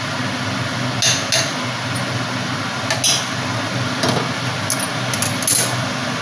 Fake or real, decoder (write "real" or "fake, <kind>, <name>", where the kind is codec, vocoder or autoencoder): real